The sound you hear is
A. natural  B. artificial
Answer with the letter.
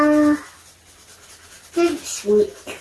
A